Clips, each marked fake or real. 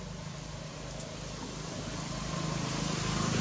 real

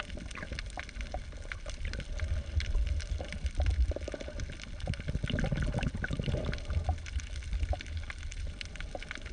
real